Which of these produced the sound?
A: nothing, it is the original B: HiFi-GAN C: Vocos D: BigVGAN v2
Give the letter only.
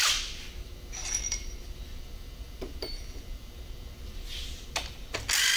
D